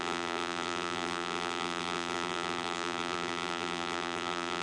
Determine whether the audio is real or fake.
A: fake